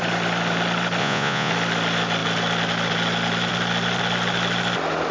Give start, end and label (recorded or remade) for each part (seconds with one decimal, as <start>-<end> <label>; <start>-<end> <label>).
0.0-1.0 recorded; 1.0-1.5 remade; 1.5-5.1 recorded